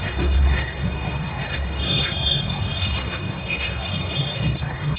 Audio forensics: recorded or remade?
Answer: remade